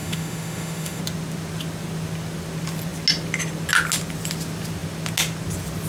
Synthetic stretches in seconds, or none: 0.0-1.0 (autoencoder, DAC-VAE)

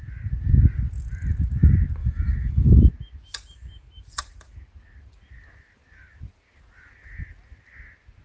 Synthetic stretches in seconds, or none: 2.0-2.9 (autoencoder, DAC-VAE)

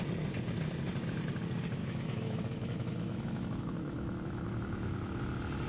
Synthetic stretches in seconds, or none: 1.8-5.2 (autoencoder, DAC-VAE)

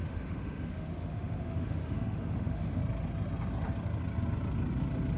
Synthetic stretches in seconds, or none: 0.0-2.8 (autoencoder, DAC-VAE)

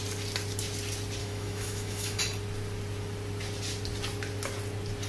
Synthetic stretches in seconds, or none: 1.2-2.2 (autoencoder, DAC-VAE)